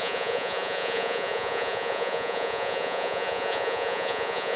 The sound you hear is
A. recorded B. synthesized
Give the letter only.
B